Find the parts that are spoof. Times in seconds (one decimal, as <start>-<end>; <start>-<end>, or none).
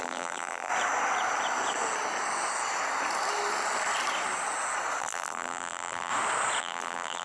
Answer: 0.0-0.7; 5.0-6.1; 6.6-7.2